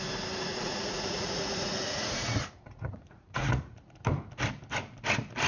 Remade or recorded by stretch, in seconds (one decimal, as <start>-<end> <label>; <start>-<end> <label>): 0.0-0.5 recorded; 0.5-3.8 remade; 3.8-5.5 recorded